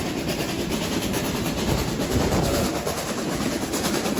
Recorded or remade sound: remade